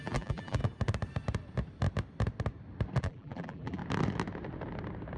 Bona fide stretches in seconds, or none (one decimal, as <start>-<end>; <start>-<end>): 0.6-3.0; 3.8-5.2